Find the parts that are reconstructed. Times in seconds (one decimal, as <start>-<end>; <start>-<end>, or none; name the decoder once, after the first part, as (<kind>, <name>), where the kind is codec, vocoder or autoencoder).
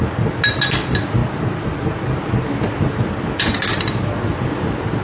none